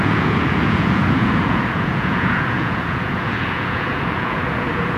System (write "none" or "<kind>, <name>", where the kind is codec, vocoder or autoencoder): vocoder, Vocos